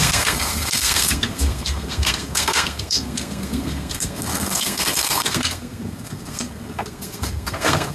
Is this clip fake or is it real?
fake